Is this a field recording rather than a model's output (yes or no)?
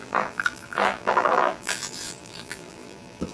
no